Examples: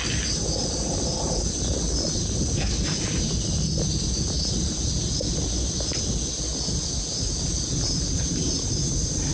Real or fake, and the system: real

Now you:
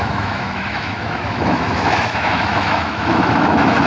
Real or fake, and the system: fake, autoencoder, DAC-VAE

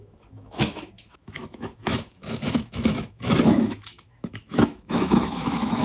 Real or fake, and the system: fake, autoencoder, DAC-VAE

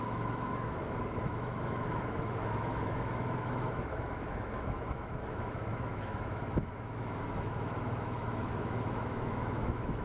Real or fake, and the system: fake, autoencoder, DAC-VAE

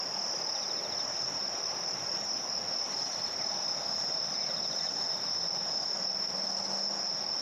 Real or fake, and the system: real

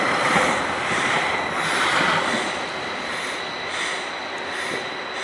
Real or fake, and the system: real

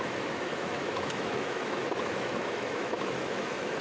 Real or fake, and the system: fake, autoencoder, DAC-VAE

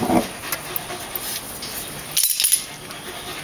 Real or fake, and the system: real